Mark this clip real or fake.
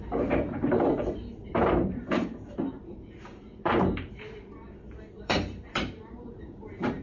fake